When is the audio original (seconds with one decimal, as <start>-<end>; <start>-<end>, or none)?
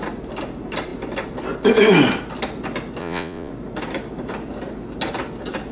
0.0-3.0; 3.5-5.7